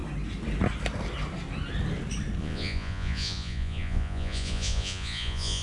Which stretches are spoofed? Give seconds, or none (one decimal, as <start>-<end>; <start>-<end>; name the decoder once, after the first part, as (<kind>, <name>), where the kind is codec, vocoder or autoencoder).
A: 2.4-5.6 (vocoder, Vocos)